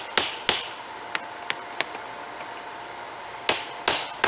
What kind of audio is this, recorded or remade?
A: recorded